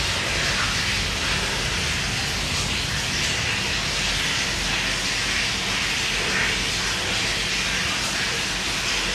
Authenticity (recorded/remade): recorded